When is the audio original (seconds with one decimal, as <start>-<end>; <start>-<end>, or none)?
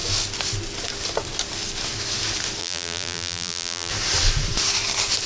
0.0-2.6; 3.9-5.3